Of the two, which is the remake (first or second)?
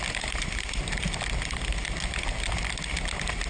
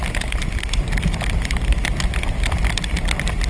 second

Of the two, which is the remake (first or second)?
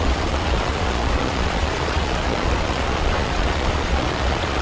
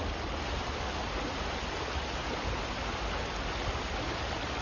first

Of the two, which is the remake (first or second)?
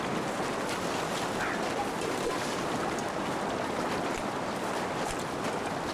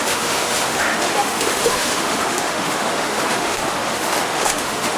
second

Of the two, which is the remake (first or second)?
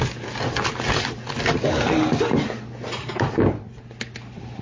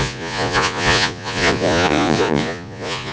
second